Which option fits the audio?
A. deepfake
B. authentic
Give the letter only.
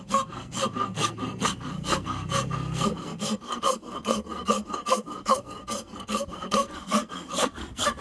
A